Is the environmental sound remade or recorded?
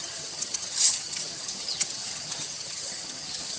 remade